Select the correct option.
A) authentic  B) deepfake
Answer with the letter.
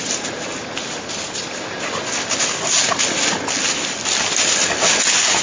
A